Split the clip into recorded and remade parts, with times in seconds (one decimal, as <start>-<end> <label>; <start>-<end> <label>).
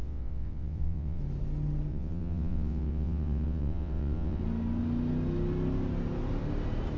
0.0-1.2 remade; 1.2-1.9 recorded; 1.9-4.4 remade; 4.4-7.0 recorded